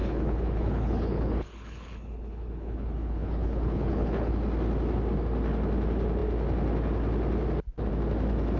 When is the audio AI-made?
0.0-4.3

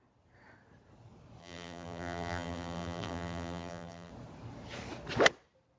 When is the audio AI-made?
1.4-4.1